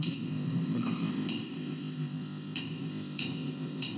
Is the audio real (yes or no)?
no